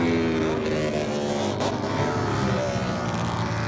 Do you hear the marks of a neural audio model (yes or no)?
no